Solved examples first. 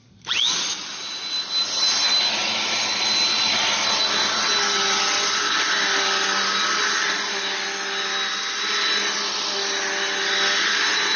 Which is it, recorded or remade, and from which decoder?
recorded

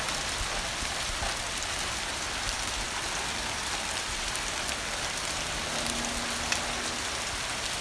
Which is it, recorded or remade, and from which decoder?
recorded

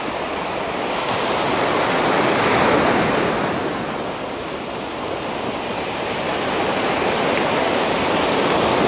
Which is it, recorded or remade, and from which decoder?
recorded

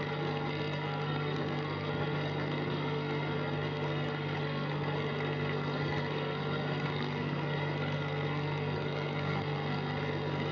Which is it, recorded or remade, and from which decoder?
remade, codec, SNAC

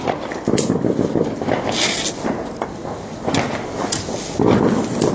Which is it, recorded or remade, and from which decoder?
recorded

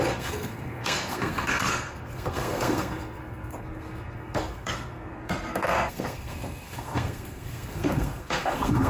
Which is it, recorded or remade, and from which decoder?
remade, codec, SNAC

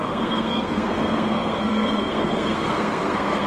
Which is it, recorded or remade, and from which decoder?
remade, codec, SNAC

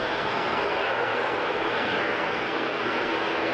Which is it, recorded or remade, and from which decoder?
remade, codec, SNAC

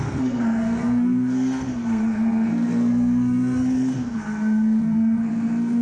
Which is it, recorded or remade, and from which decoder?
remade, codec, SNAC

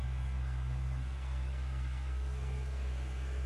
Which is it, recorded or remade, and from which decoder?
remade, codec, SNAC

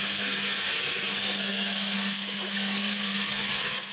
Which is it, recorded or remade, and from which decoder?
remade, codec, SNAC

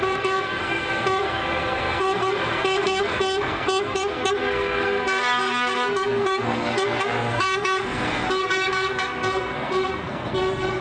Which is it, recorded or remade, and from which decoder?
remade, codec, SNAC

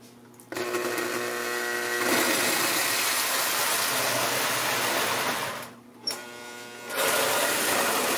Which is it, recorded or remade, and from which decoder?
recorded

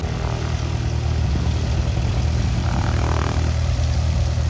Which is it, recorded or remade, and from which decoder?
recorded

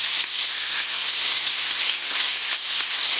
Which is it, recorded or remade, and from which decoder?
remade, codec, SNAC